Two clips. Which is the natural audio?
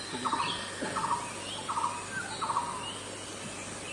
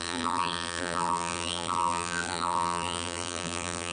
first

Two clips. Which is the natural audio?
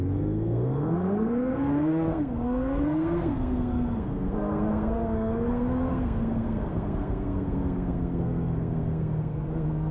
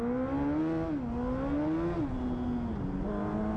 second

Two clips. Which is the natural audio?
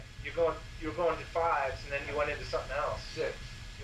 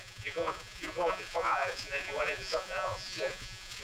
first